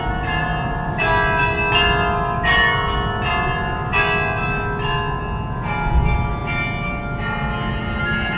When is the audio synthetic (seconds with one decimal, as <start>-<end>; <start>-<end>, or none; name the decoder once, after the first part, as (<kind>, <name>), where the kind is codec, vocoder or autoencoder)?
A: none